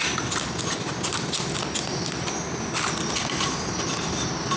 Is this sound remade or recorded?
recorded